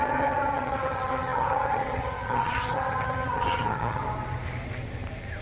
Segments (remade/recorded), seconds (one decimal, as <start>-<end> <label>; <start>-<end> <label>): 0.0-4.0 remade; 4.0-5.4 recorded